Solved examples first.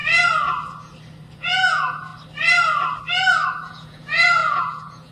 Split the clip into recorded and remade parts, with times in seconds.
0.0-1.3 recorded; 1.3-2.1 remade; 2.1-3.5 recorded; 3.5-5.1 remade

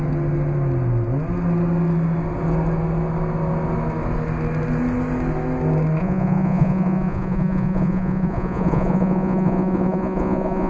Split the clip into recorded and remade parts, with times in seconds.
0.0-6.0 recorded; 6.0-10.7 remade

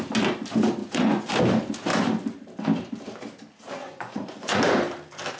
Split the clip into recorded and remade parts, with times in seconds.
0.0-0.8 recorded; 0.8-1.3 remade; 1.3-3.8 recorded; 3.8-4.6 remade; 4.6-5.4 recorded

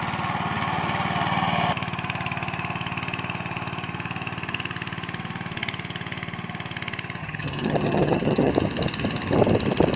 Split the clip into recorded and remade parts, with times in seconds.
0.0-7.2 recorded; 7.2-8.5 remade; 8.5-10.0 recorded

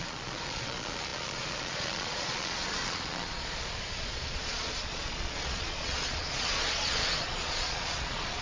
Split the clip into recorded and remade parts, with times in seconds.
0.0-8.4 remade

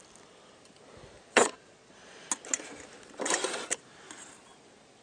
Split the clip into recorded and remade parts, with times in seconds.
0.0-1.3 recorded; 1.3-2.2 remade; 2.2-5.0 recorded

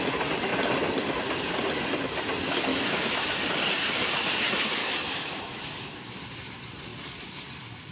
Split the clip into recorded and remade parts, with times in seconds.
0.0-2.7 recorded; 2.7-3.3 remade; 3.3-4.8 recorded; 4.8-6.2 remade; 6.2-7.9 recorded

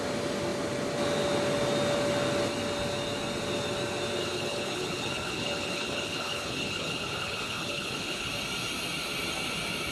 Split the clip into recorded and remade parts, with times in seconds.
0.0-4.2 recorded; 4.2-8.3 remade; 8.3-9.9 recorded